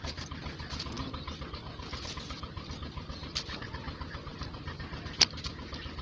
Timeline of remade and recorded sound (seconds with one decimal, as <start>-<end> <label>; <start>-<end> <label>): 0.0-6.0 recorded